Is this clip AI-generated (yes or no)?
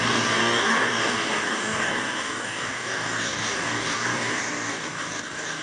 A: yes